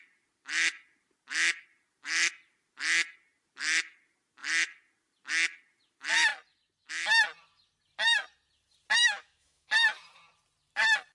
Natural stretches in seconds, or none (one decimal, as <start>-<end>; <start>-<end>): 0.0-9.0; 9.7-11.1